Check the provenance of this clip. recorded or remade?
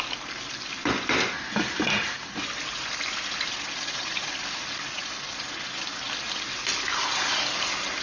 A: recorded